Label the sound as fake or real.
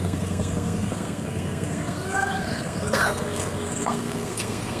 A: fake